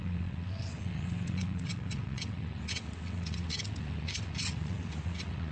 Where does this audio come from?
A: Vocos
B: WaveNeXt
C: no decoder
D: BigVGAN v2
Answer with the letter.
B